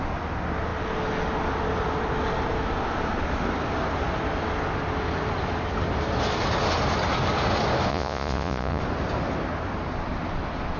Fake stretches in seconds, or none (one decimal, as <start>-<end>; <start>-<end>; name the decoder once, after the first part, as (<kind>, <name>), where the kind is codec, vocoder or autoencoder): 7.9-8.8 (vocoder, Vocos)